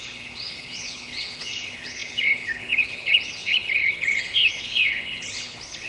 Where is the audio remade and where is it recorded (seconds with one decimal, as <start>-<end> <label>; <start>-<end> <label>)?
0.0-5.9 remade